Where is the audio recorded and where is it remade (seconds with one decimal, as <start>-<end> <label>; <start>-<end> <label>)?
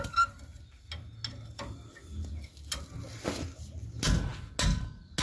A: 0.0-5.2 recorded